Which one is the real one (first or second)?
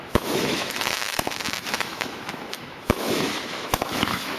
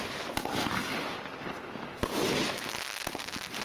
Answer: second